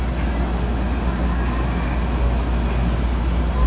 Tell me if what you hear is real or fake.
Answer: real